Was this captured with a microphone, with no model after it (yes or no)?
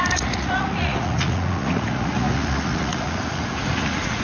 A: no